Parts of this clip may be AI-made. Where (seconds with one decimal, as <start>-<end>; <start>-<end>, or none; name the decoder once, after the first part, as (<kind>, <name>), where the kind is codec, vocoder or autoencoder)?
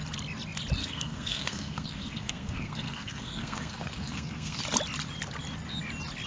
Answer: 0.8-4.6 (codec, SNAC)